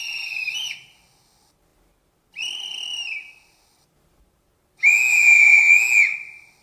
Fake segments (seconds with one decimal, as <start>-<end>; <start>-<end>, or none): 5.1-5.6